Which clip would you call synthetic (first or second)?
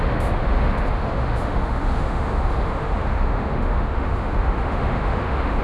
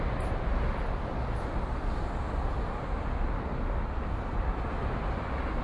first